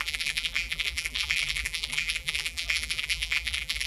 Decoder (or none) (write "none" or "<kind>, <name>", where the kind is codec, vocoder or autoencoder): vocoder, BigVGAN v2